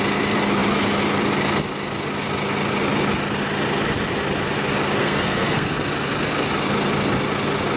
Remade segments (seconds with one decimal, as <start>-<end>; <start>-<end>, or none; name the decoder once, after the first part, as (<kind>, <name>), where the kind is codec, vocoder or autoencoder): 5.0-5.7 (codec, SNAC)